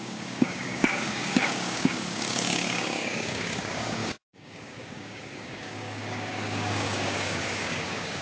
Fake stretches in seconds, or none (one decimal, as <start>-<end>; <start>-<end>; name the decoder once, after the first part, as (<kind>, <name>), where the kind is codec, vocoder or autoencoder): 0.0-8.2 (codec, DAC)